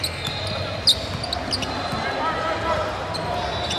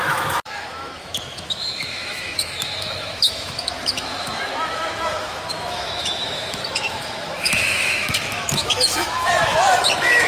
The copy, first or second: second